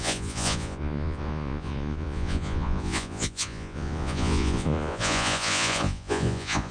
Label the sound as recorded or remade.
remade